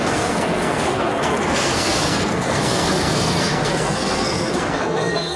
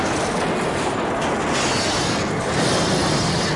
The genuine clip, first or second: second